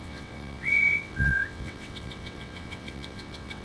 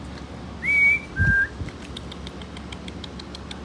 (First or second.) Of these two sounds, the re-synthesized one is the first